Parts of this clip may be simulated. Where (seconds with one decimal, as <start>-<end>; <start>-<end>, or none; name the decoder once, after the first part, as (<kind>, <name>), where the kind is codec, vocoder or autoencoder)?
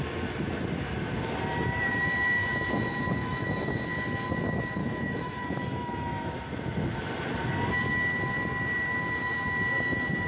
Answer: 3.2-3.7 (autoencoder, DAC-VAE); 4.8-6.3